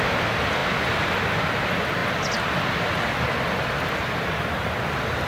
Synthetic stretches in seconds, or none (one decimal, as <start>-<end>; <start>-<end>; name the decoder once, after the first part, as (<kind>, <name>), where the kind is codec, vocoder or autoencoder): none